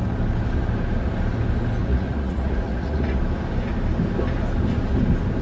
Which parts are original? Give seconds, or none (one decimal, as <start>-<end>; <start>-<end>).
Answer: 0.0-1.8; 3.2-5.4